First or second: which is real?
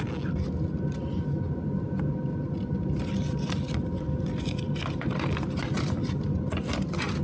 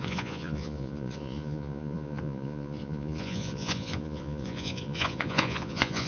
first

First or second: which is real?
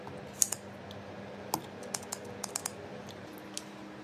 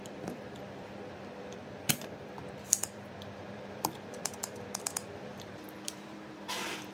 first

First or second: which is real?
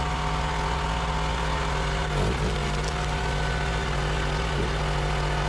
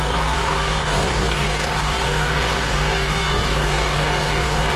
first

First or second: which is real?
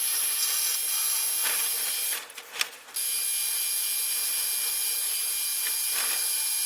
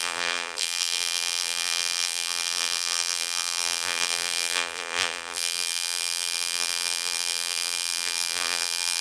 first